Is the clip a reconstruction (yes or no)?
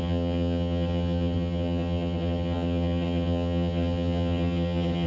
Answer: yes